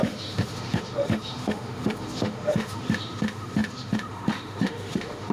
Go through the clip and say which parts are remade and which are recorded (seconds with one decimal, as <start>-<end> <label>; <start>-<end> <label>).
0.0-5.3 remade